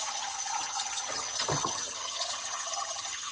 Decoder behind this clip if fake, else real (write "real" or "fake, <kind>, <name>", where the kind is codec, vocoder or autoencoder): fake, vocoder, HiFi-GAN